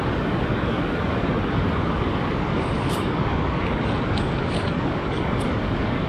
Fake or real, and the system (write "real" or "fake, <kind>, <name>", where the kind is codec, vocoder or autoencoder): fake, codec, DAC